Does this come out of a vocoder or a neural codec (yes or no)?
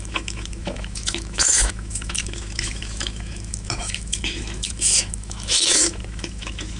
yes